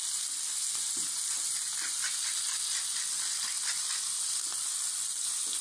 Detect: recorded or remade recorded